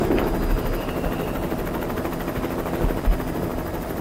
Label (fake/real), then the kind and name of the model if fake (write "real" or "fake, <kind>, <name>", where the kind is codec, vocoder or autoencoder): real